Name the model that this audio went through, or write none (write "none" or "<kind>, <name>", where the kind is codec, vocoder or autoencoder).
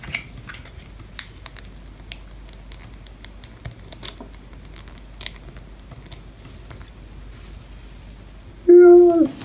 none